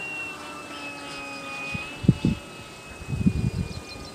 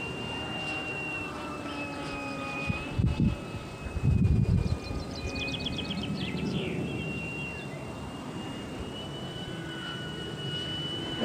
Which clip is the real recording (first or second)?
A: first